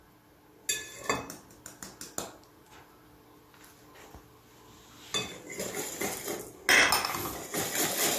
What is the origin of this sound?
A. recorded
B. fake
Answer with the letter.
A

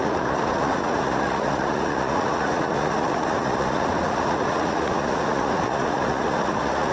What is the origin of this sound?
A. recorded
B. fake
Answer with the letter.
B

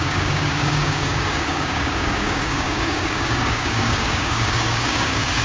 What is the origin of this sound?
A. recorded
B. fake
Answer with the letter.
B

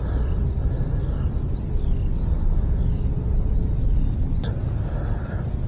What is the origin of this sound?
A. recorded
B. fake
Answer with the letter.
A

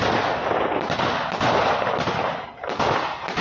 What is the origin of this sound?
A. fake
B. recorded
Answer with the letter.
B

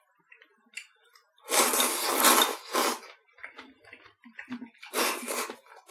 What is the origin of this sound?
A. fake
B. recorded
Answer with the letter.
B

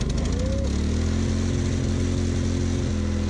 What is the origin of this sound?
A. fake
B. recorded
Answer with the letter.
B